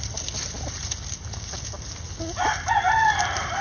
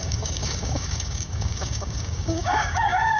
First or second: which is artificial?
second